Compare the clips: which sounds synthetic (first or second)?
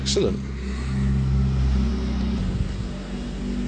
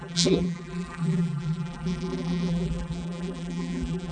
second